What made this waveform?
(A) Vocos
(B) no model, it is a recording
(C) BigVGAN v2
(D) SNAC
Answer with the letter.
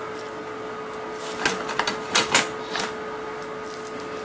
B